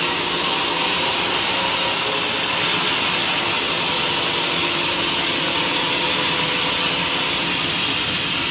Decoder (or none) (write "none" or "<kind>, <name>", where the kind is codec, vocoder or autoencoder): none